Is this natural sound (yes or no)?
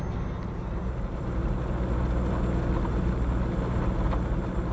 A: yes